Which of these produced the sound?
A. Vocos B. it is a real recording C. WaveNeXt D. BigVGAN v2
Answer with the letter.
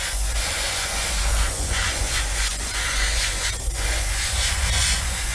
A